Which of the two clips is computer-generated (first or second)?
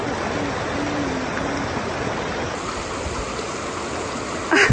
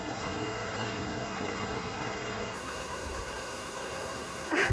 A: second